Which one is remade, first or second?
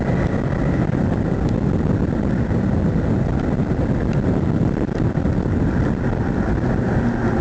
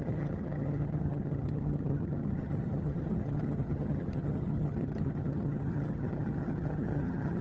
second